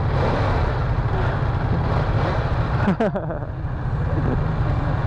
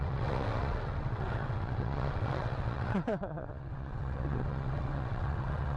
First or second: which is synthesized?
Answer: second